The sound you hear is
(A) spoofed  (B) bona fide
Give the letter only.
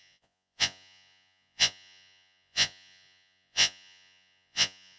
A